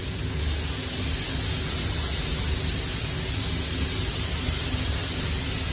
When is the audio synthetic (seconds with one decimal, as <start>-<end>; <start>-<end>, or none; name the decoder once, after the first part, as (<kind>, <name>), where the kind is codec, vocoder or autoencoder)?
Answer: none